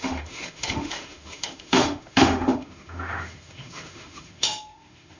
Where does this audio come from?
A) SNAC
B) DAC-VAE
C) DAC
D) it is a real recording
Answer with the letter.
B